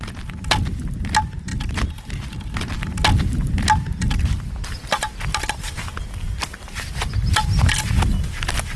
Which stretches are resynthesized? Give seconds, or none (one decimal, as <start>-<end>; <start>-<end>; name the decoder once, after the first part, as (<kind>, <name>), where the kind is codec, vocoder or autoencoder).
none